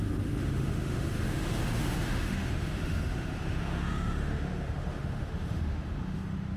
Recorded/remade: remade